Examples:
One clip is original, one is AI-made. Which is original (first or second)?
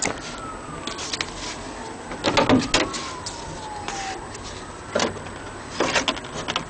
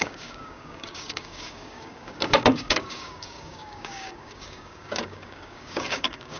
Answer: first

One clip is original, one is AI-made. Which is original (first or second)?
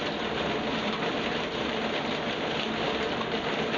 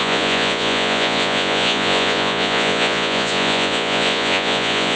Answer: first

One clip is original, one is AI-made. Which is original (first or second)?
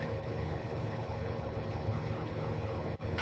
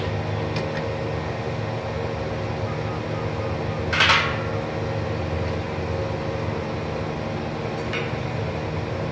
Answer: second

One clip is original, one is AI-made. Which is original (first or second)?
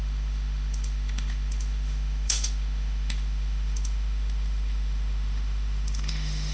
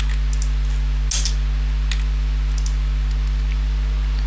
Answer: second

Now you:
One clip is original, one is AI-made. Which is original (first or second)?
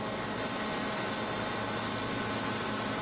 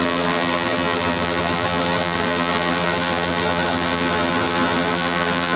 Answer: first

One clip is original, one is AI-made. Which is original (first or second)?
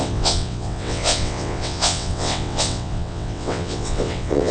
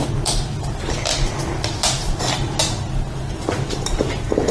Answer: second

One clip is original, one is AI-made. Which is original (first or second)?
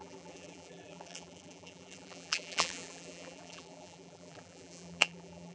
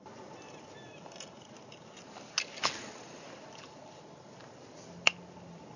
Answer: second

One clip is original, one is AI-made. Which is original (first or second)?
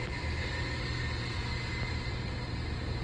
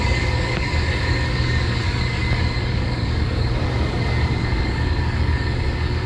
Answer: first